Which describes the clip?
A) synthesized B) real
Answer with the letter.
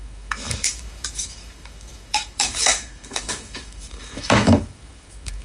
A